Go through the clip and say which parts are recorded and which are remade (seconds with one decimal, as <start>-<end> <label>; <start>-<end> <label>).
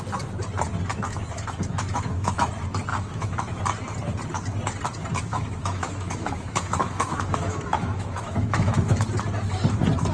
0.0-0.9 recorded; 0.9-2.5 remade; 2.5-2.9 recorded; 2.9-3.6 remade; 3.6-5.3 recorded; 5.3-9.1 remade; 9.1-10.1 recorded